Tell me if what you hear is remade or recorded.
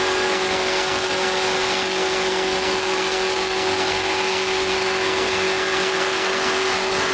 remade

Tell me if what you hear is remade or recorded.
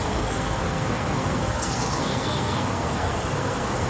remade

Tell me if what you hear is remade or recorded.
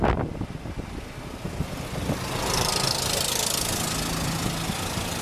recorded